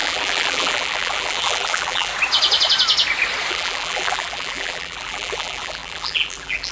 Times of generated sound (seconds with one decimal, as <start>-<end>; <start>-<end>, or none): 0.0-2.1; 3.5-6.7